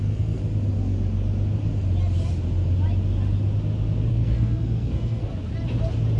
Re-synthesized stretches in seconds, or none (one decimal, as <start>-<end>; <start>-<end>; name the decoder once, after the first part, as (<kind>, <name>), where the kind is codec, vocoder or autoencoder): 0.0-0.4 (codec, SNAC); 4.1-5.3